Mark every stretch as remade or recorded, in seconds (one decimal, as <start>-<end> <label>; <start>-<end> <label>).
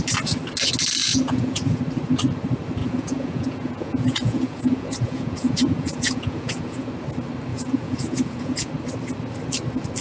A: 0.0-1.0 recorded; 1.0-1.8 remade; 1.8-2.8 recorded; 2.8-6.9 remade; 6.9-7.5 recorded; 7.5-8.7 remade; 8.7-10.0 recorded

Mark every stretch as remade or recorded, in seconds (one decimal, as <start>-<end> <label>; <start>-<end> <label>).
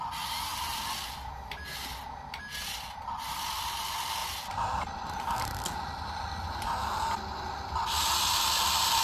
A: 0.0-9.0 recorded